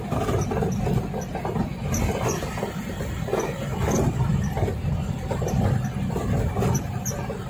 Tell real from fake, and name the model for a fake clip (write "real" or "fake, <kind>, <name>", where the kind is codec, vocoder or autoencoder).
real